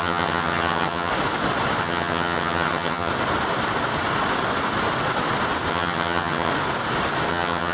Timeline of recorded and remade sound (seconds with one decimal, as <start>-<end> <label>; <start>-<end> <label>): 0.0-1.1 remade; 1.1-1.8 recorded; 1.8-3.1 remade; 3.1-5.7 recorded; 5.7-6.5 remade; 6.5-7.3 recorded; 7.3-7.7 remade